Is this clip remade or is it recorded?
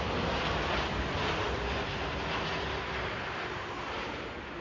recorded